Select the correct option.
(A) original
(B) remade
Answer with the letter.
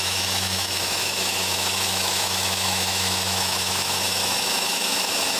B